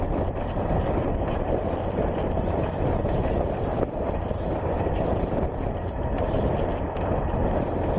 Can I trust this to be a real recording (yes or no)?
no